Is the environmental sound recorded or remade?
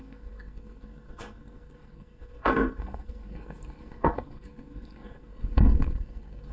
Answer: remade